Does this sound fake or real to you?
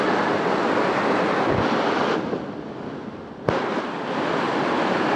real